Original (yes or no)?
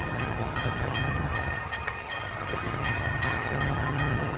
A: no